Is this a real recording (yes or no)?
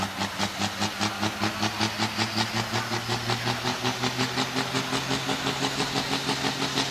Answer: yes